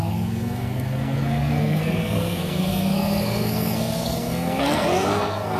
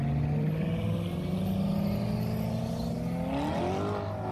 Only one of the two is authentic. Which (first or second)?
second